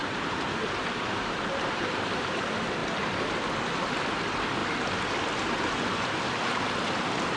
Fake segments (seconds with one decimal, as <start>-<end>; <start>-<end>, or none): 0.0-2.1